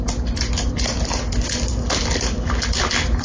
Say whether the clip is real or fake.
real